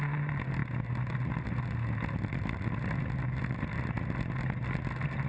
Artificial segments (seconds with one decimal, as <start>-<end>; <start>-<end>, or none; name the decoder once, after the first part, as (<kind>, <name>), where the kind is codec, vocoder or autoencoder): none